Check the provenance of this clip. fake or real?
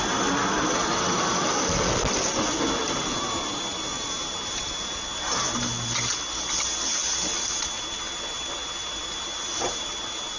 real